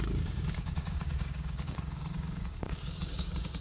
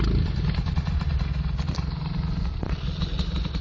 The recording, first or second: second